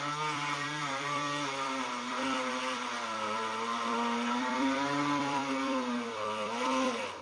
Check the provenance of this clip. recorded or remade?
remade